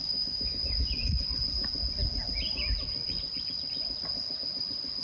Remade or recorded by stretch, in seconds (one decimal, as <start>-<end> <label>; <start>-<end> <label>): 0.0-0.6 remade; 0.6-5.0 recorded